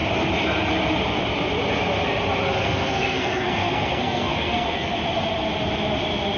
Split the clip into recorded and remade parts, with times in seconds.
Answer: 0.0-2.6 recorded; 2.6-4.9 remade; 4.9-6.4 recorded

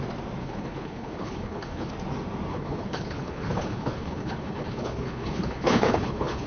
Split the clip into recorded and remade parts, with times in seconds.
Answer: 0.0-0.4 recorded; 0.4-1.9 remade; 1.9-2.5 recorded; 2.5-6.5 remade

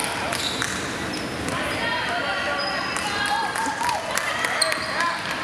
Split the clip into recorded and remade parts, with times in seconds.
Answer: 0.0-5.4 recorded

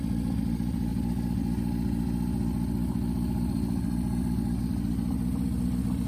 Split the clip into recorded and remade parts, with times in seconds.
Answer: 0.0-6.1 recorded